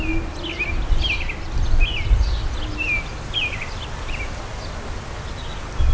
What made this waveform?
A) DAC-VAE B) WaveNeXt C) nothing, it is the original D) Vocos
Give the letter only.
C